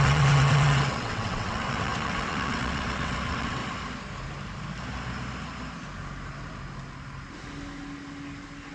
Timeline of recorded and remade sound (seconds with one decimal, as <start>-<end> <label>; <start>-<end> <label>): 0.0-3.6 remade; 3.6-8.7 recorded